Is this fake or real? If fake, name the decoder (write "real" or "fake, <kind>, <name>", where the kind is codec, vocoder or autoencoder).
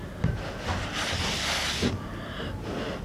real